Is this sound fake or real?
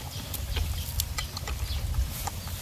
real